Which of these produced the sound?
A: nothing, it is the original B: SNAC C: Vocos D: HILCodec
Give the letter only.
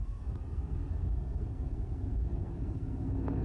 B